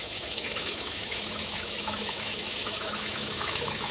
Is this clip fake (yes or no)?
yes